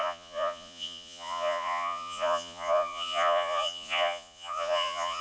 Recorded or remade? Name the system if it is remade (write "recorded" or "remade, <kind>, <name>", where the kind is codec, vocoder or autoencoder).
remade, vocoder, Vocos